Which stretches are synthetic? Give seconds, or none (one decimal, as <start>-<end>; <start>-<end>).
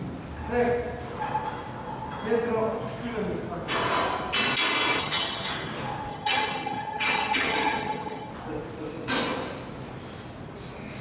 5.0-5.5; 6.1-8.3